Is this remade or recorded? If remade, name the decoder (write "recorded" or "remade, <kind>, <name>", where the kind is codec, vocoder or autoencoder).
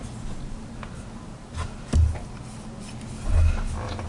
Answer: recorded